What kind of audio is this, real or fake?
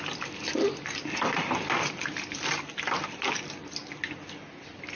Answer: real